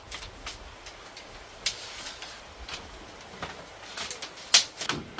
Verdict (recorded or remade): recorded